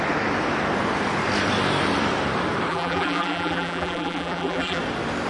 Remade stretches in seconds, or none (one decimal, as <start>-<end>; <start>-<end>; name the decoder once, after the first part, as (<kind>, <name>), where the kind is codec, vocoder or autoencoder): 2.7-4.8 (vocoder, BigVGAN v2)